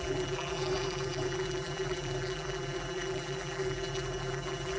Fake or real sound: fake